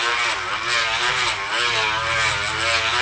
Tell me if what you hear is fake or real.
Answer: real